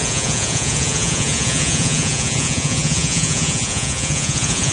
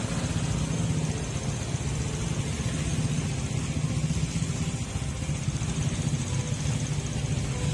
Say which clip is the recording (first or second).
second